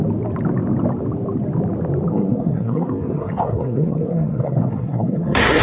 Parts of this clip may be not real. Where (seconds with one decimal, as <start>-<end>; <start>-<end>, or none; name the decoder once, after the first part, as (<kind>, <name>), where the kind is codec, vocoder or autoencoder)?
2.1-5.6 (codec, SNAC)